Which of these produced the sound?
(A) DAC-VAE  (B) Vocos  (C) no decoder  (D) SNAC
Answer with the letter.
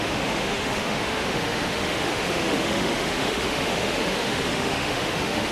A